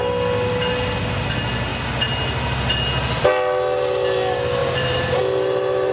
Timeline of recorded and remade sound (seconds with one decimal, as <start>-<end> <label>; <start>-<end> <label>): 0.0-4.6 recorded; 4.6-5.2 remade; 5.2-5.9 recorded

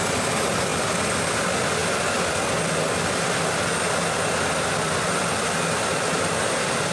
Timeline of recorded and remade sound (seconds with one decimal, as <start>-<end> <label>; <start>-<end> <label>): 0.0-1.8 remade; 1.8-5.9 recorded; 5.9-6.9 remade